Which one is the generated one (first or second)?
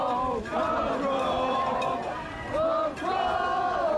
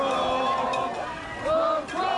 first